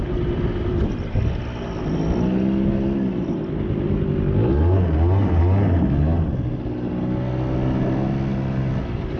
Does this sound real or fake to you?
real